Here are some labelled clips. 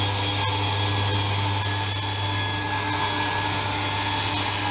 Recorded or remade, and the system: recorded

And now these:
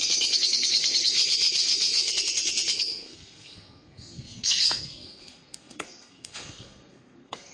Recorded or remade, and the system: remade, codec, SNAC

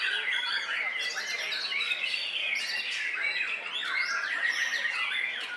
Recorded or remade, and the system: recorded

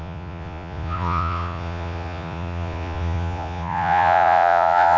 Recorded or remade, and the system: remade, vocoder, Vocos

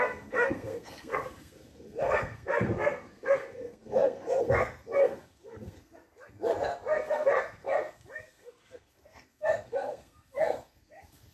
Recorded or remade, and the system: remade, codec, SNAC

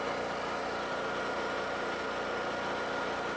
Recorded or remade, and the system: recorded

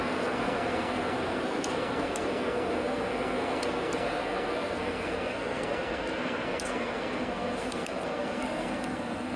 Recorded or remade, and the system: remade, codec, SNAC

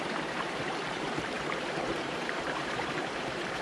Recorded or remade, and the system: remade, vocoder, BigVGAN v2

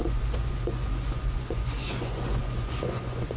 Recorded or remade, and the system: remade, vocoder, Vocos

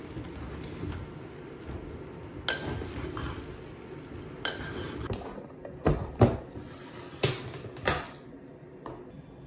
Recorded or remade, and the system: recorded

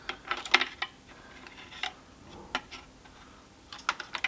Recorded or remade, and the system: recorded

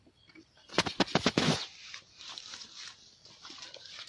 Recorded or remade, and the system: recorded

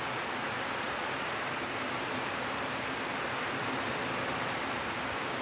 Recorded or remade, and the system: recorded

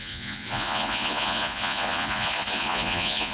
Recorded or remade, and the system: remade, vocoder, Vocos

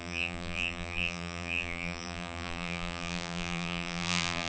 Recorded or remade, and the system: remade, vocoder, BigVGAN v2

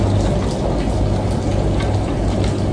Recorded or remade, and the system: recorded